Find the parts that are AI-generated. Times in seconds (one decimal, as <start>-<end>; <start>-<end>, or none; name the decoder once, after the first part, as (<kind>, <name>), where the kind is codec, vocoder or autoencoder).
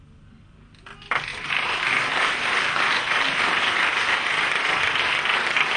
1.3-4.5 (vocoder, BigVGAN v2)